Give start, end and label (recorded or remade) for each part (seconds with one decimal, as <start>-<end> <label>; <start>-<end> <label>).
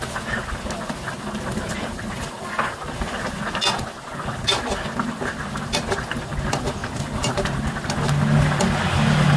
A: 0.0-9.4 recorded